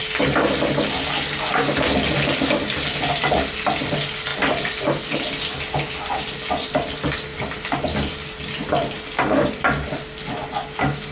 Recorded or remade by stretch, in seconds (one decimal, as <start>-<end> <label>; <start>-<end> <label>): 0.0-11.1 recorded